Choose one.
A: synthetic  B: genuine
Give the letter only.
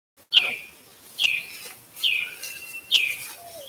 B